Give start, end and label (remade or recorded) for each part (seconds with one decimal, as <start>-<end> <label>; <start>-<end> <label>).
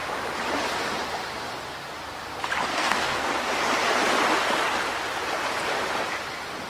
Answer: 0.0-2.7 recorded; 2.7-3.3 remade; 3.3-6.7 recorded